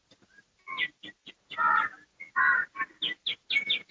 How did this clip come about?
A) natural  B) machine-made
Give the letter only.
A